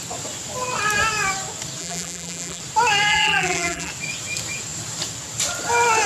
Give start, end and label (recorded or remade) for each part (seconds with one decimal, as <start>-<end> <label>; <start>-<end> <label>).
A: 0.0-1.8 recorded; 1.8-2.6 remade; 2.6-3.1 recorded; 3.1-3.9 remade; 3.9-6.1 recorded